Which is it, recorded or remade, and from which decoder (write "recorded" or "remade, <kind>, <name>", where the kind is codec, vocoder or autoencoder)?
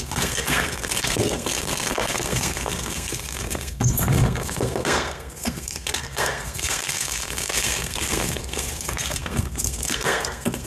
remade, codec, SNAC